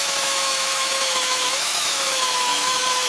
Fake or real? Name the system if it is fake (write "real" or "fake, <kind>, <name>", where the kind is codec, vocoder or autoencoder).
fake, autoencoder, DAC-VAE